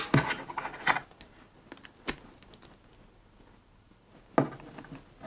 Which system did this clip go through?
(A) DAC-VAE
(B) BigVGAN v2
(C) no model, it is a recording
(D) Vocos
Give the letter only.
C